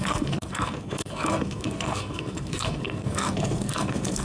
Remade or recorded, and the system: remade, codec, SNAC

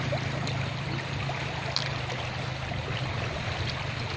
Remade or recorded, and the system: recorded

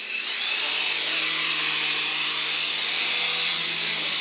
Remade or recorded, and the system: recorded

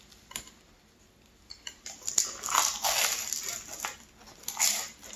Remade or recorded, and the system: recorded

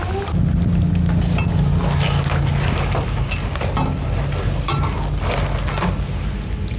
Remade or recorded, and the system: recorded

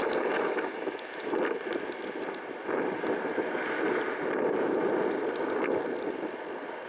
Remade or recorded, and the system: recorded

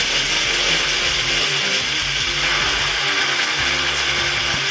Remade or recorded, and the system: recorded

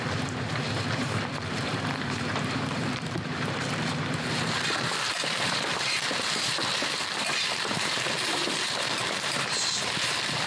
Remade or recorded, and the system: remade, vocoder, BigVGAN v2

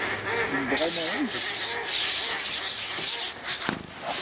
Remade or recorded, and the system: recorded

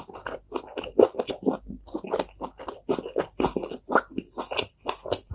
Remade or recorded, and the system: recorded